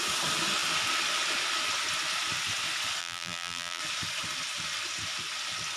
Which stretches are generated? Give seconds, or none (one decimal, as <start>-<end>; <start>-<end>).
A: 3.0-3.8